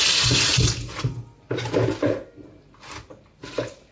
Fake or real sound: real